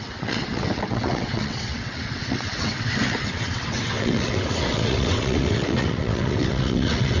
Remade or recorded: remade